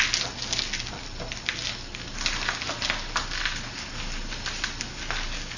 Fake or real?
real